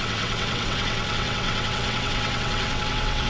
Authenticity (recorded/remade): remade